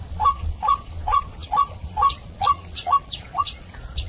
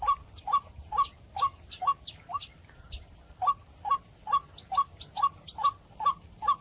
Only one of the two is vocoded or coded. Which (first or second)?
first